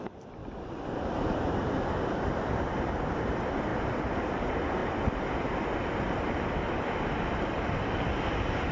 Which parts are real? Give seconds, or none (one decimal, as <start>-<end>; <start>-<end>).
0.4-0.9; 4.8-5.8